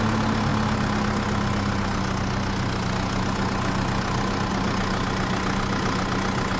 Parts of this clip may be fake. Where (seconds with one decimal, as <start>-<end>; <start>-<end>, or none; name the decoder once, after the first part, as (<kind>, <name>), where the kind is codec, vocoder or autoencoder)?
none